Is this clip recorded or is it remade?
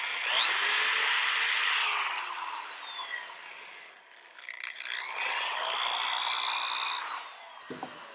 recorded